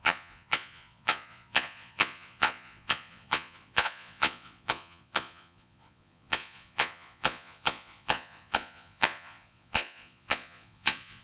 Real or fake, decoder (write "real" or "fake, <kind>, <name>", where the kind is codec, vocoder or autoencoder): fake, vocoder, Vocos